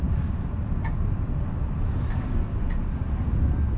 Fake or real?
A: real